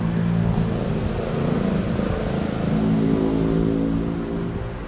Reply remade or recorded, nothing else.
recorded